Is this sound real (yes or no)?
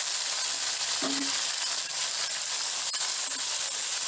yes